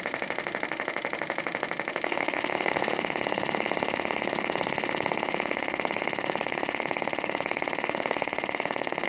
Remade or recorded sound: remade